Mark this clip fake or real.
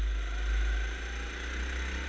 real